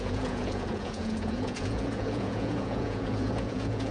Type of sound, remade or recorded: remade